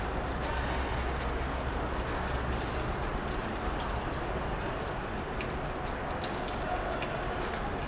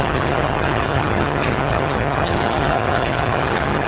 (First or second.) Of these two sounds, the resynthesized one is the second